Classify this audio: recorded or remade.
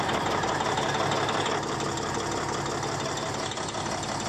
recorded